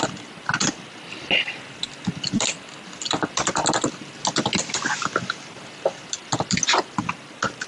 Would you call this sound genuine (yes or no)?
yes